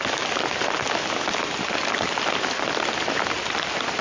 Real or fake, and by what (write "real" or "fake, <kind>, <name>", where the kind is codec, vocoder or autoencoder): real